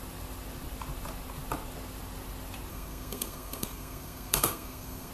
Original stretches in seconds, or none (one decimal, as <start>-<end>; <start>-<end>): 0.0-2.7